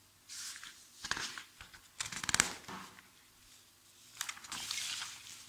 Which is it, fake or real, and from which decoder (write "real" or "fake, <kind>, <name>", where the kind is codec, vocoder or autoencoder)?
real